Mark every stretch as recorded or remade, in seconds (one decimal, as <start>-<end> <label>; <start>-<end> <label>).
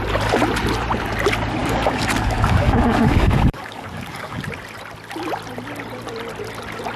0.0-1.6 recorded; 1.6-4.4 remade; 4.4-7.0 recorded